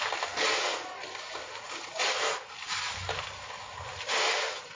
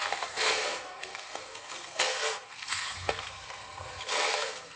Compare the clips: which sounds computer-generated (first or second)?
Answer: second